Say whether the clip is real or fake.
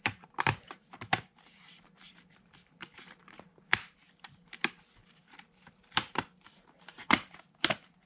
fake